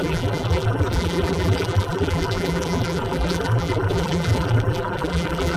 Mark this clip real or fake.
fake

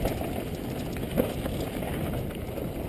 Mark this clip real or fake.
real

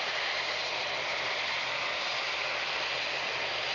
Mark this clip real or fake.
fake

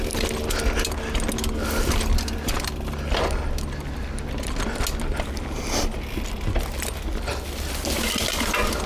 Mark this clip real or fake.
real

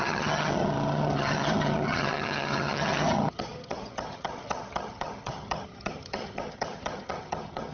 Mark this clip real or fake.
fake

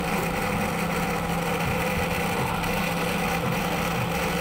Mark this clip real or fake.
real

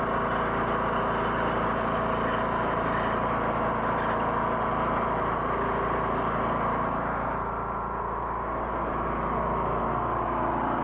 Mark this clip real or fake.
real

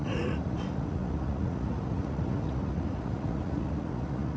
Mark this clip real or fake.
fake